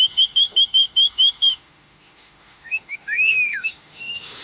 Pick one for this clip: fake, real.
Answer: fake